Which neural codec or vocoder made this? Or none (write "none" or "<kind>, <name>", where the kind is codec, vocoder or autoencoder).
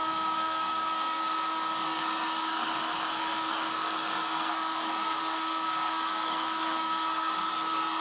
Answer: codec, SNAC